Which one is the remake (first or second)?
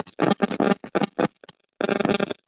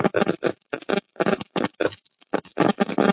second